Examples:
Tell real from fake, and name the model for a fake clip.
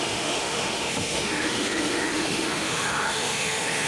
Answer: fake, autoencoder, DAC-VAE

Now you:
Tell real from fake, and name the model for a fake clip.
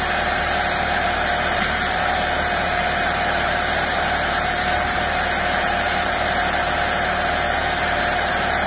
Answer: fake, vocoder, BigVGAN v2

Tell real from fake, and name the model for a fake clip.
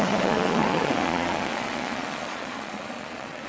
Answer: fake, vocoder, Vocos